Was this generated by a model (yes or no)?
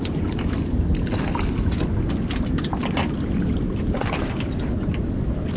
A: no